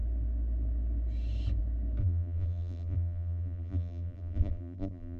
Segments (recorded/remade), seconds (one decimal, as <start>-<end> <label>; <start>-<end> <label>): 0.0-2.0 recorded; 2.0-5.2 remade